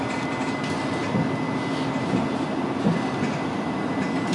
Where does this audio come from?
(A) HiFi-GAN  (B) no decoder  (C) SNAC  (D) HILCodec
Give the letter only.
B